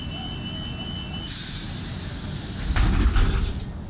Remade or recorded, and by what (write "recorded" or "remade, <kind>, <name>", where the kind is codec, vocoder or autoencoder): recorded